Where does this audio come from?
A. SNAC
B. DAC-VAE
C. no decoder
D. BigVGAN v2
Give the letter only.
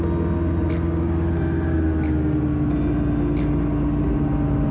C